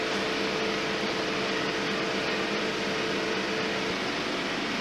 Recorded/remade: recorded